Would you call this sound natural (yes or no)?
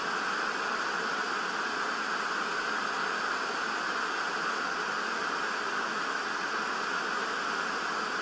yes